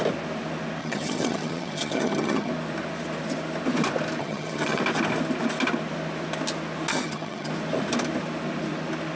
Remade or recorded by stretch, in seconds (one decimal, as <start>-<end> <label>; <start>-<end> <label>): 0.0-0.8 recorded; 0.8-2.5 remade; 2.5-4.2 recorded; 4.2-4.8 remade; 4.8-6.9 recorded; 6.9-7.5 remade; 7.5-9.2 recorded